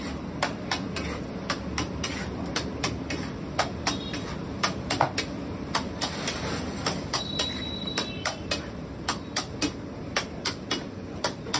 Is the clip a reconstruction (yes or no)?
no